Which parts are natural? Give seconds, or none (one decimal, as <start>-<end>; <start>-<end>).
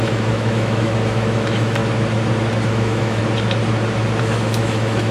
1.8-2.7; 3.2-4.2